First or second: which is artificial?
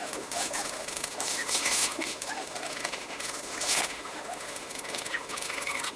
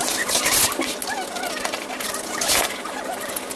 first